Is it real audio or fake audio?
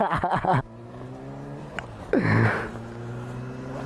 real